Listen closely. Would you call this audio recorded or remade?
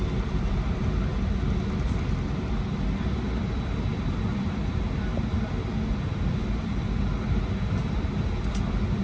recorded